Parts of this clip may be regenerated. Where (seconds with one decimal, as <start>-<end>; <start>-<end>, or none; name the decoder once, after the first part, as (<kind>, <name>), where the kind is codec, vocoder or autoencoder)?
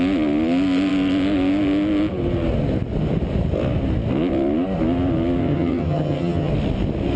5.4-6.5 (vocoder, HiFi-GAN)